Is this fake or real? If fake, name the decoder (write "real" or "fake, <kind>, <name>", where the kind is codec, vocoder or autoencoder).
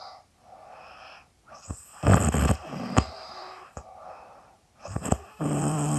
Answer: fake, vocoder, BigVGAN v2